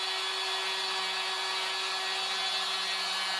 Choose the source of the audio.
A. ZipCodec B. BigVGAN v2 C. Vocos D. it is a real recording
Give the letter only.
D